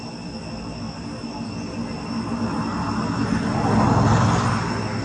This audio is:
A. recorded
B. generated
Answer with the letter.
A